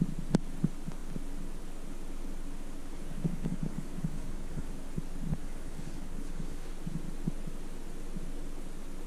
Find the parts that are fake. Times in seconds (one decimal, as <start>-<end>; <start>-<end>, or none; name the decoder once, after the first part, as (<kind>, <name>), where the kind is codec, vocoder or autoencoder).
2.8-4.7 (codec, DAC); 5.4-6.7